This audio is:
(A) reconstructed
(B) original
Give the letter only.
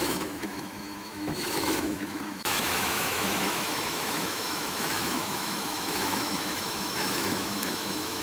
A